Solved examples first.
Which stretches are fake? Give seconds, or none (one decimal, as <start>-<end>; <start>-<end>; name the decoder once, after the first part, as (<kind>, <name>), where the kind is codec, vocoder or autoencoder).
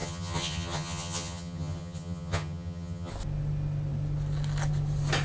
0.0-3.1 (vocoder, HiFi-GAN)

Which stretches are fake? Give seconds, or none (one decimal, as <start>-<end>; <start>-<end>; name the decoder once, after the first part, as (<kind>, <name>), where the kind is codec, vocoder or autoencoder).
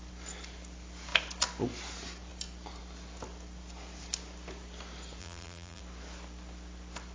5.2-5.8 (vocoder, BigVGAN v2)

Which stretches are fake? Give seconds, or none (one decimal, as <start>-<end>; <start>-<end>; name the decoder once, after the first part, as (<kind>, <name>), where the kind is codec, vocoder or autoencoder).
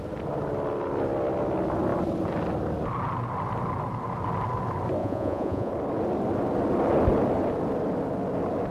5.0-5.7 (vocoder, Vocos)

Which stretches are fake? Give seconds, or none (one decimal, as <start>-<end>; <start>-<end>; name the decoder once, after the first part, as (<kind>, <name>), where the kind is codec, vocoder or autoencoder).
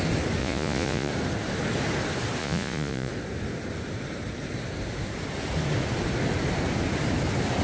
0.4-1.1 (vocoder, Vocos); 2.4-3.1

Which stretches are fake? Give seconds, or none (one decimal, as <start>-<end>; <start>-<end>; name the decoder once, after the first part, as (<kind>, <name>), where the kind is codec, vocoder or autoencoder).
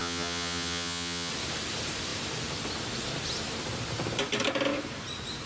0.0-1.3 (vocoder, HiFi-GAN)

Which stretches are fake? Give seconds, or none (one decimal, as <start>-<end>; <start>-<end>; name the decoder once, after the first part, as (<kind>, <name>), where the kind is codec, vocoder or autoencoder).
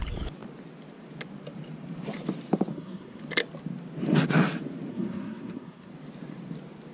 2.7-3.2 (codec, SNAC); 4.9-5.9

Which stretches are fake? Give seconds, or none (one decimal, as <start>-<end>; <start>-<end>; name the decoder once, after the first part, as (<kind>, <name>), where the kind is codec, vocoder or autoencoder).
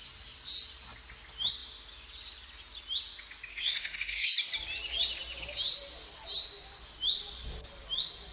3.5-4.3 (codec, SNAC)